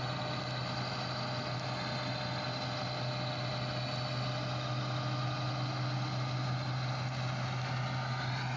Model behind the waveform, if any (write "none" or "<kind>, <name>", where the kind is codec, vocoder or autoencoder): none